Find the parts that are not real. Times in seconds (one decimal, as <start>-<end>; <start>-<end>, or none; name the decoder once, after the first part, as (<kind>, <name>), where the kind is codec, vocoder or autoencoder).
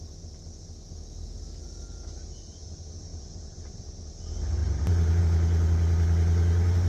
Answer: 3.1-3.9 (vocoder, BigVGAN v2); 4.6-5.2